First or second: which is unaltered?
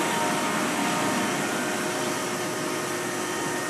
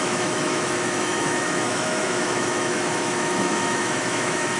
first